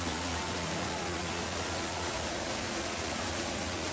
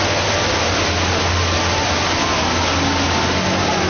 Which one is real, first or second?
second